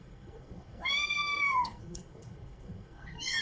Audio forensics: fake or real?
fake